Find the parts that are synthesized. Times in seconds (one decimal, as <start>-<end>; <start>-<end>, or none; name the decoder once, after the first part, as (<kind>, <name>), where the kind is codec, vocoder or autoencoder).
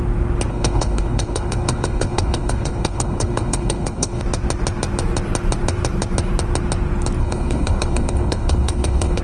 0.5-4.2 (codec, HILCodec); 7.2-9.2